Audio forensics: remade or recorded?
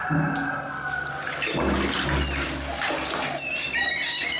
recorded